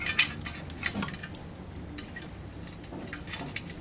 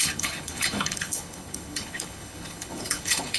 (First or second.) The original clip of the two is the first